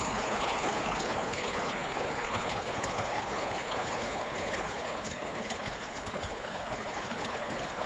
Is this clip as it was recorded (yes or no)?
no